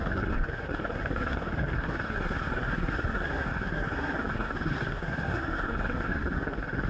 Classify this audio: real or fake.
fake